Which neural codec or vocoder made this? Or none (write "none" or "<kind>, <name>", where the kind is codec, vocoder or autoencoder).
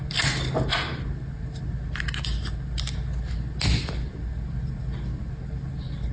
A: none